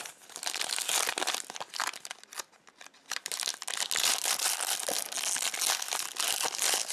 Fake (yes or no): no